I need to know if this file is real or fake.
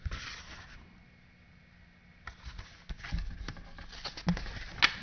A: real